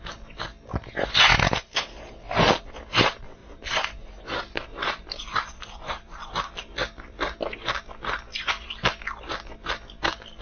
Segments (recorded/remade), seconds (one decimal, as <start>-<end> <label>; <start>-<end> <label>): 0.0-3.4 recorded; 3.4-4.2 remade; 4.2-4.7 recorded; 4.7-6.5 remade; 6.5-10.4 recorded